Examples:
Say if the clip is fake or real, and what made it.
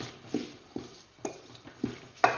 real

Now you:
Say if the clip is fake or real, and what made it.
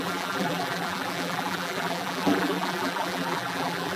fake, vocoder, BigVGAN v2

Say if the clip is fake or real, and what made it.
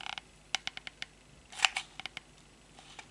real